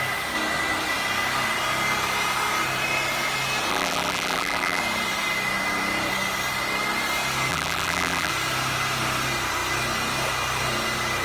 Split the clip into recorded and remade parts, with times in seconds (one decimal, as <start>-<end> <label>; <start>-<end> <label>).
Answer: 0.0-3.7 recorded; 3.7-4.8 remade; 4.8-7.5 recorded; 7.5-8.3 remade; 8.3-11.2 recorded